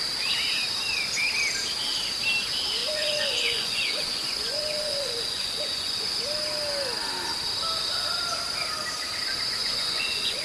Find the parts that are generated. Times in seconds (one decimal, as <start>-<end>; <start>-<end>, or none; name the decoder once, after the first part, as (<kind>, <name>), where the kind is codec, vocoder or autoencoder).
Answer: 2.8-6.2 (vocoder, Vocos); 9.6-10.4